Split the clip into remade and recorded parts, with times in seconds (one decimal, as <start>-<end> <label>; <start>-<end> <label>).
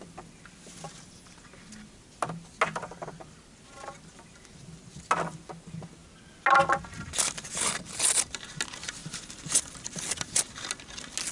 0.0-11.3 recorded